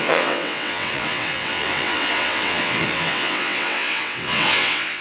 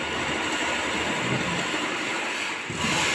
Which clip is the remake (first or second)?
first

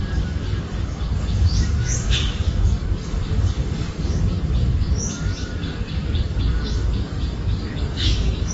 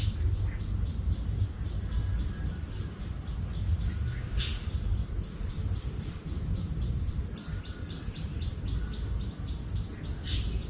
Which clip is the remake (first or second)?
first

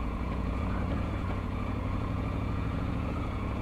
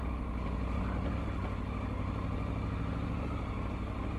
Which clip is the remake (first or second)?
first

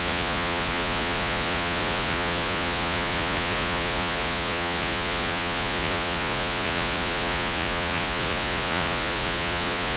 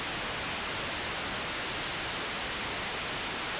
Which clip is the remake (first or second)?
first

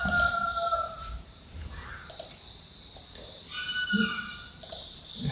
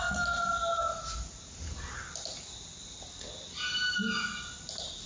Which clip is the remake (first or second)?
first